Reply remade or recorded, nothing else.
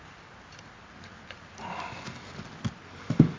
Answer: recorded